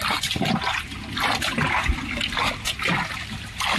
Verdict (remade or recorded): recorded